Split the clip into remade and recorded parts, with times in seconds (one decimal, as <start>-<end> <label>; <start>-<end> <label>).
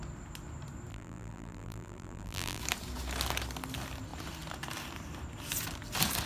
0.0-0.9 recorded; 0.9-2.6 remade; 2.6-6.3 recorded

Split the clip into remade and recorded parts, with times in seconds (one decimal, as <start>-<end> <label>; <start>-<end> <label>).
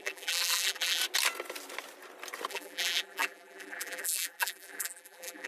0.0-1.0 remade; 1.0-2.5 recorded; 2.5-5.5 remade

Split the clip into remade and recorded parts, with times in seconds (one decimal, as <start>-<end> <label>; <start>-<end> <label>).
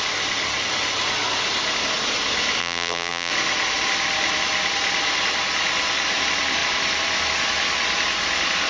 0.0-2.6 recorded; 2.6-3.3 remade; 3.3-8.7 recorded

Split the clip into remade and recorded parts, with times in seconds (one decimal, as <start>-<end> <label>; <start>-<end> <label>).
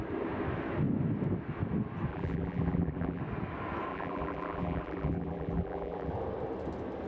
0.0-2.1 recorded; 2.1-3.2 remade; 3.2-3.9 recorded; 3.9-6.1 remade; 6.1-7.1 recorded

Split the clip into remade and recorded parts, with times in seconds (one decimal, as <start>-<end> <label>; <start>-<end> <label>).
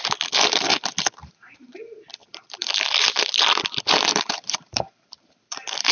0.0-2.2 recorded; 2.2-5.9 remade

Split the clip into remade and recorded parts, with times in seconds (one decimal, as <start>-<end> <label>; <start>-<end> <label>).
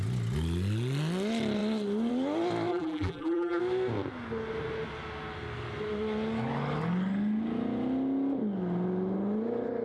0.0-2.7 recorded; 2.7-3.6 remade; 3.6-9.8 recorded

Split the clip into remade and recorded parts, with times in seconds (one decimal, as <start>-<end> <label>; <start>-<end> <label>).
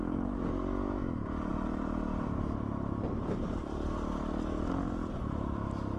0.0-6.0 recorded